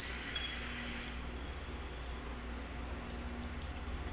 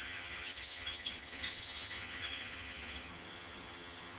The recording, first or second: first